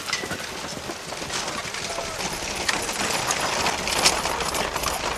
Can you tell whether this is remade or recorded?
recorded